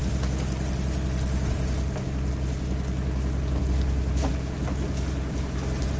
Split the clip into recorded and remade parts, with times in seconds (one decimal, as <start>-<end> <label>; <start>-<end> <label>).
0.0-6.0 recorded